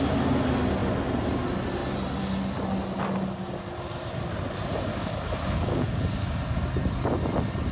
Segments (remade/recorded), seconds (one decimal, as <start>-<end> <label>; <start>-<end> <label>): 0.0-4.9 recorded; 4.9-6.0 remade; 6.0-7.7 recorded